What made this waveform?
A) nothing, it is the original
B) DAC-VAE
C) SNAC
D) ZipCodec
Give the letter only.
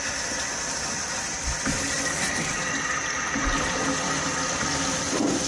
A